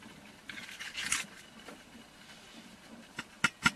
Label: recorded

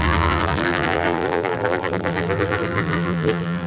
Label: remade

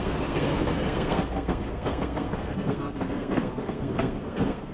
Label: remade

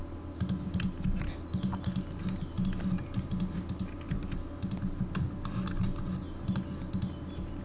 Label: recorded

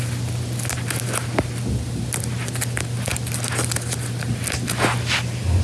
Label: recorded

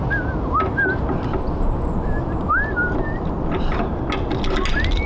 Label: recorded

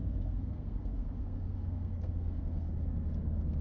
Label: remade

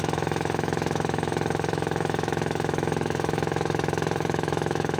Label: remade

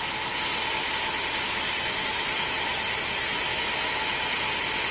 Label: recorded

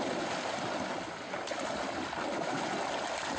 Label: recorded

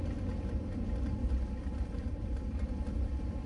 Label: recorded